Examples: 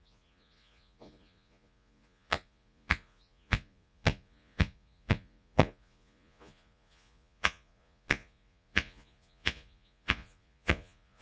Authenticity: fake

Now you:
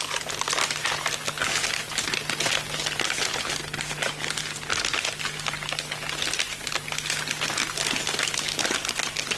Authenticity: real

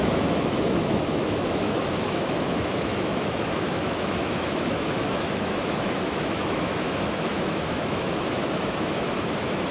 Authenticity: fake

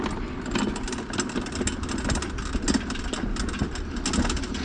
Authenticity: real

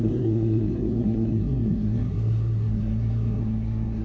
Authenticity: fake